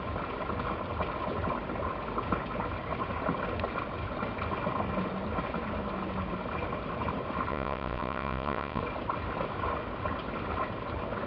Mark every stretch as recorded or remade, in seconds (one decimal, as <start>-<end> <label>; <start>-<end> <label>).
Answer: 0.0-7.5 recorded; 7.5-8.8 remade; 8.8-11.3 recorded